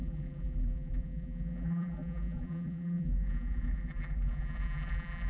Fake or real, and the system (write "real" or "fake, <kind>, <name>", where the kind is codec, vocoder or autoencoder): fake, vocoder, BigVGAN v2